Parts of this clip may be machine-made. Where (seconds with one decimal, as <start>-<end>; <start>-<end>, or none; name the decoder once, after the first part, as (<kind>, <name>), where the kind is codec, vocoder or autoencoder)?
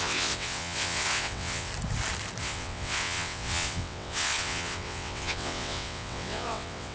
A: 0.0-1.7 (vocoder, WaveNeXt); 2.4-6.9